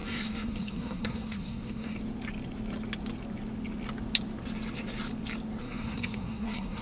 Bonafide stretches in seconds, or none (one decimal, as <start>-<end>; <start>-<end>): 2.0-5.6